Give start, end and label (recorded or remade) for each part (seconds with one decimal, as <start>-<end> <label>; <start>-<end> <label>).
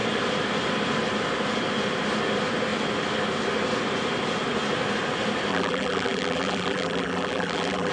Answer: 0.0-5.5 recorded; 5.5-7.9 remade